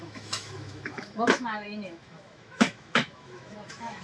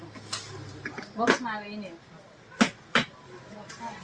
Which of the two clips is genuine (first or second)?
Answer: second